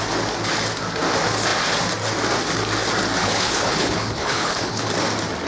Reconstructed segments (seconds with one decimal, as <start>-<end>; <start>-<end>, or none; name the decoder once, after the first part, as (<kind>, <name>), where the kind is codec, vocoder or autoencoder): 3.2-4.9 (codec, HILCodec)